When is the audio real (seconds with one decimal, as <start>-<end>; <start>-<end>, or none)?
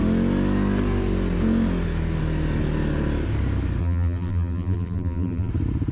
0.0-3.8; 5.5-5.9